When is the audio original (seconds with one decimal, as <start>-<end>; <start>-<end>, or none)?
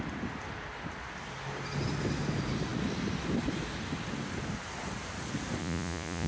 0.0-5.6